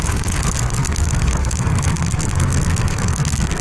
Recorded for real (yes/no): no